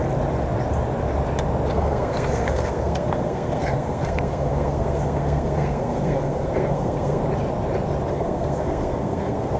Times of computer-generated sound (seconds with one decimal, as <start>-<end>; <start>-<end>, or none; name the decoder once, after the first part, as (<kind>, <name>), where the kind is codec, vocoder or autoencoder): 1.7-7.2 (codec, SNAC); 8.1-9.6